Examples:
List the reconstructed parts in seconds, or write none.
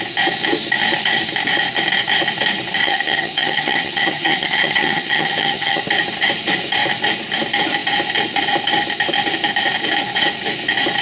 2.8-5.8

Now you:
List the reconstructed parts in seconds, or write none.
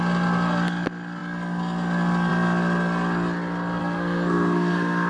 3.8-5.1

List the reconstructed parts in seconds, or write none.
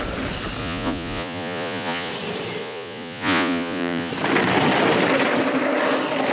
0.6-2.1; 2.6-4.1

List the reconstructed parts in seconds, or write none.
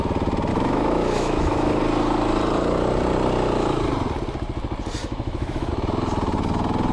0.5-1.8; 5.0-5.7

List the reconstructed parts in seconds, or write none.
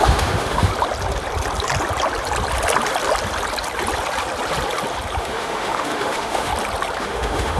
0.0-0.7; 5.2-6.5; 7.0-7.6